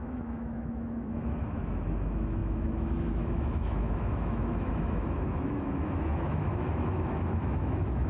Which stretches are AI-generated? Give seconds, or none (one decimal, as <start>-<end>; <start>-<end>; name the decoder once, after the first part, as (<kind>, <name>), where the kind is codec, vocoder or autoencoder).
0.0-8.1 (autoencoder, DAC-VAE)